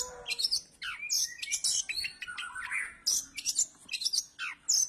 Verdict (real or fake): real